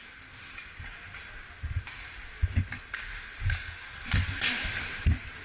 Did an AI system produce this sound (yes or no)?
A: no